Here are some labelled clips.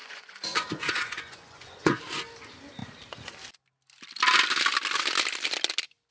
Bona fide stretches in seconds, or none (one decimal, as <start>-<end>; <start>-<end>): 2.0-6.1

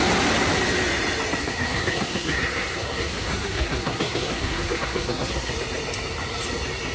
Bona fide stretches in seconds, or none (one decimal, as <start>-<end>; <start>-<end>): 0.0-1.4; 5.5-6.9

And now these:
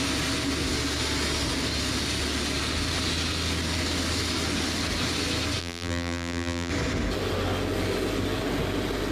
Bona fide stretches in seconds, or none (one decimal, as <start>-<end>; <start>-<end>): 0.0-5.6; 6.7-9.1

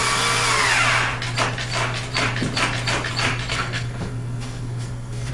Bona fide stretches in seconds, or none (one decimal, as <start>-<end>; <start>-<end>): 0.0-3.5

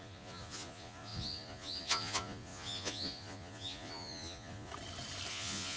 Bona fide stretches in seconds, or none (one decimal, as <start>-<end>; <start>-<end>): 4.7-5.3

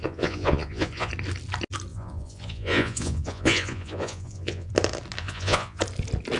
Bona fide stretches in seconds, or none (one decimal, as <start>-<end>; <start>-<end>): 1.1-1.9; 4.7-5.2; 5.8-6.4

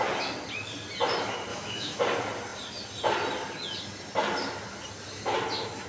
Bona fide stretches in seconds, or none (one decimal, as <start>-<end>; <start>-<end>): 0.0-1.5; 2.0-5.9